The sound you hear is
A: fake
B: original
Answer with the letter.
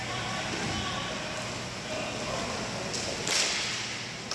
B